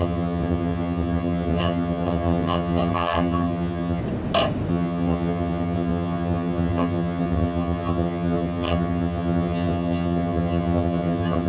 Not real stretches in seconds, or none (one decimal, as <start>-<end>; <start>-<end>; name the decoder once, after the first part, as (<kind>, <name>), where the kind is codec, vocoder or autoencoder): 0.0-4.0 (vocoder, HiFi-GAN); 4.7-11.5